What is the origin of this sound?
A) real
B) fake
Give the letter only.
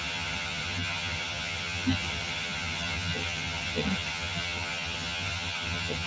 B